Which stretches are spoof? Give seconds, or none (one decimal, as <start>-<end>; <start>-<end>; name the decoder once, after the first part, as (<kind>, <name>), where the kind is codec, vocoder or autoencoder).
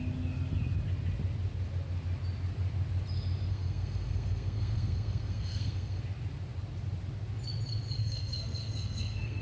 3.5-6.0 (codec, SNAC); 8.0-9.4